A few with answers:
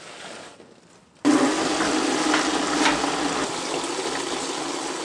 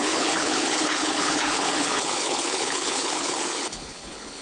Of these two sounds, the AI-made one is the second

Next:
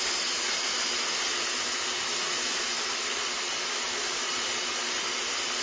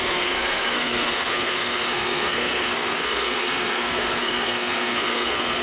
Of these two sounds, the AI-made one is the second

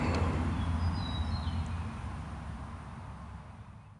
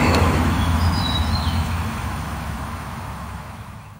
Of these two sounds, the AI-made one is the second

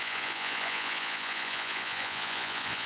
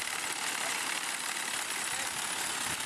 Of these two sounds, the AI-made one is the first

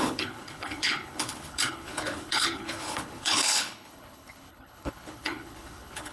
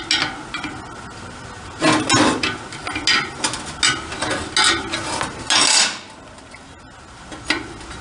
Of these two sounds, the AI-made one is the first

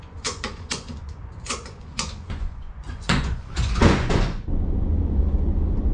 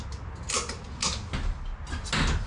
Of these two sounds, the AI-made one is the first